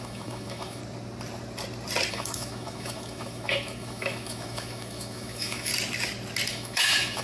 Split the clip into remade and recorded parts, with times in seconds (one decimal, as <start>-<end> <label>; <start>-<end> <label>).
0.0-0.8 remade; 0.8-2.1 recorded; 2.1-5.7 remade; 5.7-6.5 recorded; 6.5-7.2 remade